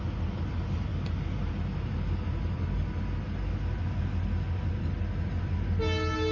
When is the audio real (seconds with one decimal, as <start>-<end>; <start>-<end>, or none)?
0.0-6.3